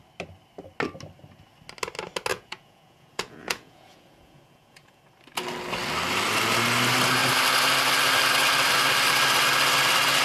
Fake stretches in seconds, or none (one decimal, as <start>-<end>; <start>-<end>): 2.3-5.0